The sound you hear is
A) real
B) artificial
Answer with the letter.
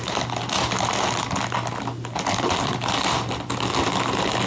A